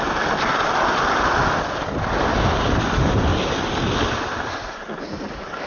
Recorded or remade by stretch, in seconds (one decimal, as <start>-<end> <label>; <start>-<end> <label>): 0.0-5.7 recorded